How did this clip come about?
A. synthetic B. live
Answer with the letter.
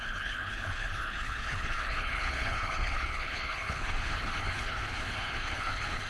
A